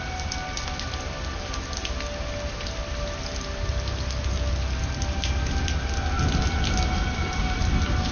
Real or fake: real